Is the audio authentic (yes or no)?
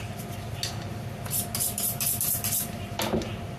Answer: yes